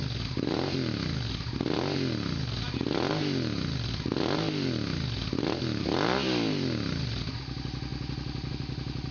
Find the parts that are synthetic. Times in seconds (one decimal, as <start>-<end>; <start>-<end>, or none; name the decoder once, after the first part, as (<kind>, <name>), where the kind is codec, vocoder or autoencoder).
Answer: none